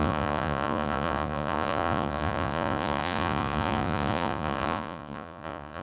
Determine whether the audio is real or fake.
fake